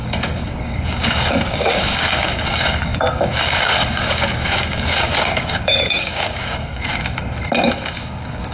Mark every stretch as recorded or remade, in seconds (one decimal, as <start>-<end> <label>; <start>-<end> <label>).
0.0-6.9 remade; 6.9-8.0 recorded; 8.0-8.5 remade